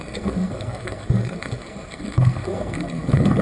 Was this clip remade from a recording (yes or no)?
yes